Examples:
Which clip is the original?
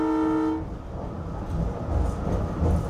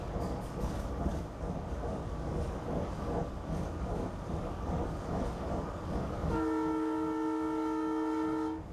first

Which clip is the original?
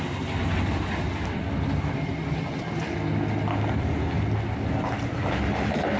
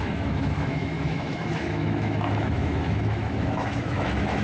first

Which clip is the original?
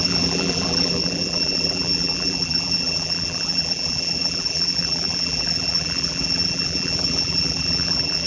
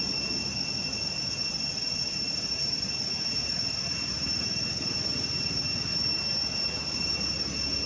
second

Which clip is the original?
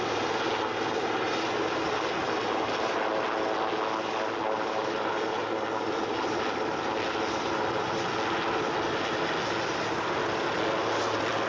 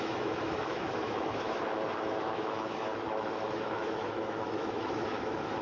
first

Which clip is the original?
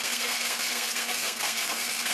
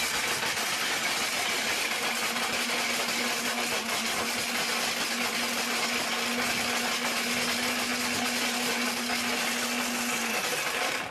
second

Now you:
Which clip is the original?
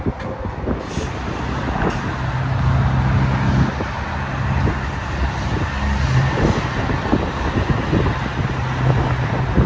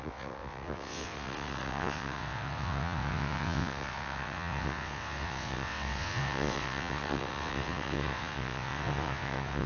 first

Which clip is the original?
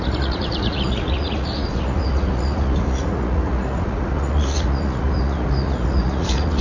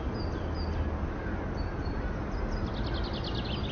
second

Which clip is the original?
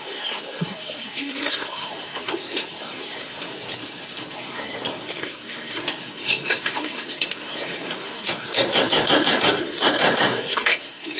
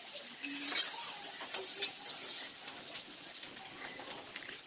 second